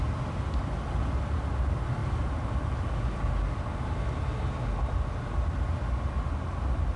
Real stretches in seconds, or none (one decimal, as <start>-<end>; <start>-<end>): 0.0-7.0